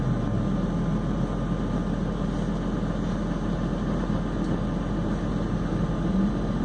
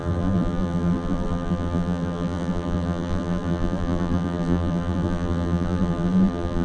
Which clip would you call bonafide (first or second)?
first